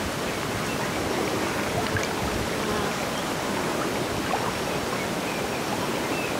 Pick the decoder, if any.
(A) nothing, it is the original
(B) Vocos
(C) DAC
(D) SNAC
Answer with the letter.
A